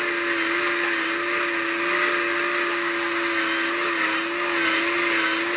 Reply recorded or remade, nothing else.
recorded